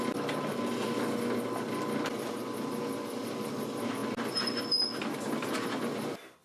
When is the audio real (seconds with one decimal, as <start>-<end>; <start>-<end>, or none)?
0.0-6.4

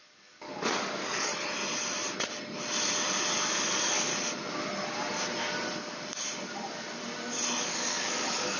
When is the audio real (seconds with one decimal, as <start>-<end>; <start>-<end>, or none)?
1.3-3.5; 4.1-7.6

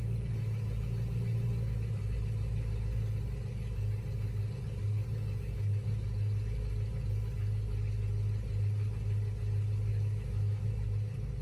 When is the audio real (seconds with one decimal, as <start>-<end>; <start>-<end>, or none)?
0.0-9.9; 10.7-11.4

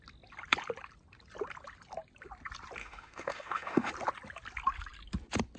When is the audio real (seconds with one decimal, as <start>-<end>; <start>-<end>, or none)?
0.0-2.8; 3.9-5.6

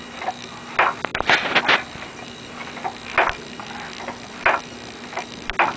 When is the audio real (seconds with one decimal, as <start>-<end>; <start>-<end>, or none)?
0.0-5.8

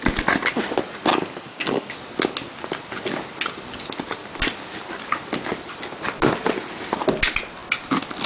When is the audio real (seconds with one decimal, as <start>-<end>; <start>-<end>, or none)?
0.0-1.1; 1.9-8.3

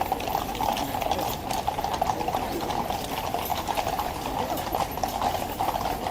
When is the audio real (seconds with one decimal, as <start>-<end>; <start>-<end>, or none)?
0.0-6.1

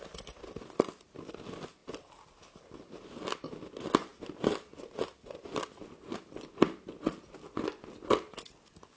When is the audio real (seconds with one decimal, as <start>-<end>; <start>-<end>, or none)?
0.0-9.0